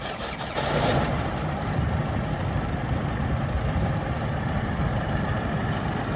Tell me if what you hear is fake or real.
fake